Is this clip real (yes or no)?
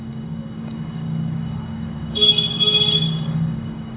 no